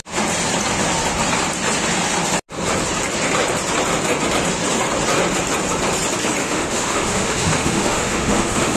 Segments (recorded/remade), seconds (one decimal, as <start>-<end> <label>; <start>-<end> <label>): 0.0-6.4 recorded; 6.4-8.8 remade